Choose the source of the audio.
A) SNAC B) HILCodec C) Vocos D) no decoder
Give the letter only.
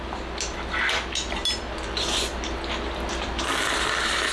D